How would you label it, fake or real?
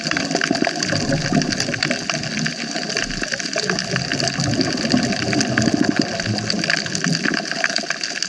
real